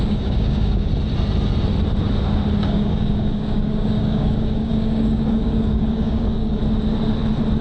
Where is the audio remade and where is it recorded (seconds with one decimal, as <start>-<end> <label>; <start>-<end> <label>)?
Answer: 0.0-0.9 remade; 0.9-2.6 recorded; 2.6-6.6 remade; 6.6-7.6 recorded